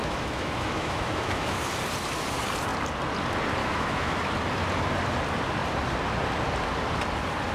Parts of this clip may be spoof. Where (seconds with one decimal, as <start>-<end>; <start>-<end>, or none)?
0.0-1.6; 3.6-4.2

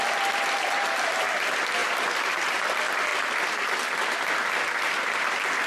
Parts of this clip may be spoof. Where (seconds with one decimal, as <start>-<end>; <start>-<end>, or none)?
1.8-2.6